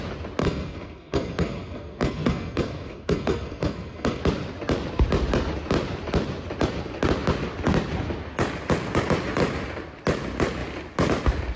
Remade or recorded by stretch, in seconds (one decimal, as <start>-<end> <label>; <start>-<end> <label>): 0.0-0.4 recorded; 0.4-4.2 remade; 4.2-11.6 recorded